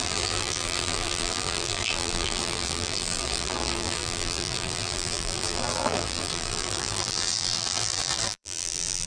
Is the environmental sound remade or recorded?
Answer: remade